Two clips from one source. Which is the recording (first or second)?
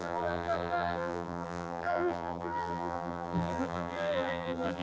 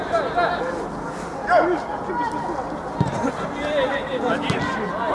second